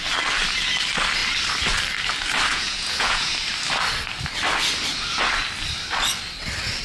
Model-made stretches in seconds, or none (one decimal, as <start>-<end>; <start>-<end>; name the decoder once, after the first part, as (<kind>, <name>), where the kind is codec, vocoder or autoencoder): 2.5-3.3 (vocoder, Vocos)

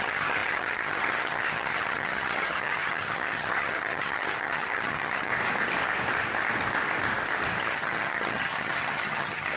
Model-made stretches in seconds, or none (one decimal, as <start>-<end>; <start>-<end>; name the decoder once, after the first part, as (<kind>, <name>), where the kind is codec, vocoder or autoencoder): 0.0-5.3 (vocoder, HiFi-GAN); 7.6-9.6

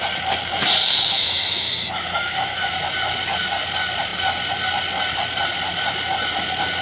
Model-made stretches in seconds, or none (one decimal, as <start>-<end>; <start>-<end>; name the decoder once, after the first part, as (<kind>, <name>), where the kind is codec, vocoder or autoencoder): 0.8-2.7 (autoencoder, DAC-VAE)